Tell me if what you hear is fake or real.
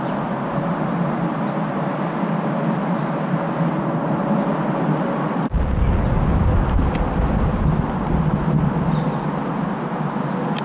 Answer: real